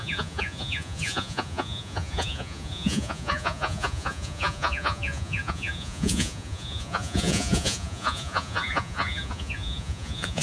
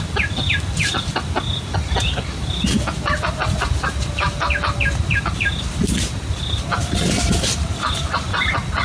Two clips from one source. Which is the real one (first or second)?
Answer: second